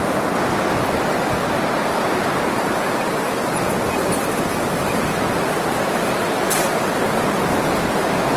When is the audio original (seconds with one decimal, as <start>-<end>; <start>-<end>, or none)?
0.0-2.1; 6.5-8.4